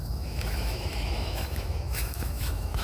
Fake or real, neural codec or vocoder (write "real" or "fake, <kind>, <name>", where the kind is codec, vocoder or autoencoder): fake, autoencoder, DAC-VAE